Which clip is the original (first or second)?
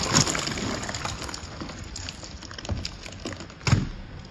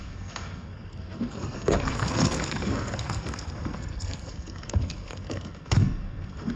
first